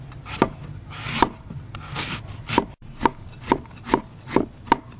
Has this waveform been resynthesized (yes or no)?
no